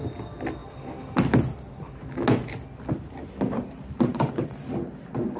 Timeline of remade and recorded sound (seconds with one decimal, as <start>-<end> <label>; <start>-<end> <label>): 0.0-4.1 recorded; 4.1-4.9 remade; 4.9-5.4 recorded